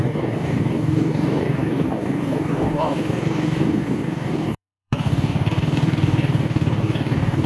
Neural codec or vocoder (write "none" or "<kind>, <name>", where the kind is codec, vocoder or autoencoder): codec, DAC